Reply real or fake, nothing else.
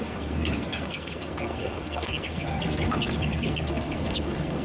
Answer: fake